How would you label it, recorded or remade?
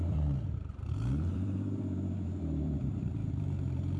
remade